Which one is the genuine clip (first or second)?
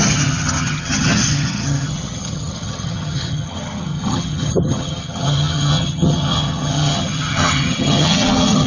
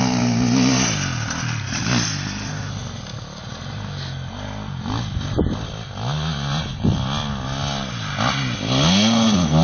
second